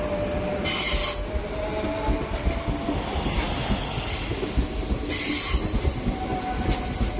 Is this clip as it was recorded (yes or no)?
yes